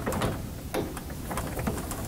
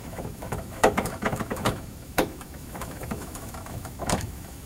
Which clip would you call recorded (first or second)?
first